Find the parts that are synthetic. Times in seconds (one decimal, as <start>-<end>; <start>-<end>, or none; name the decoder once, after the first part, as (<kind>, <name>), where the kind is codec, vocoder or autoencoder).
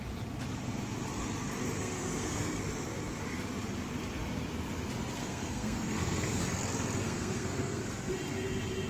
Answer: 1.8-2.6 (codec, SNAC); 5.2-6.4; 7.0-7.8